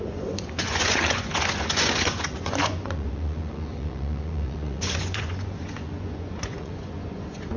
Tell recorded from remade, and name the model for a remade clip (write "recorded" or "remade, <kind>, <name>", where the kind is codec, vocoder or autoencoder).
remade, vocoder, Vocos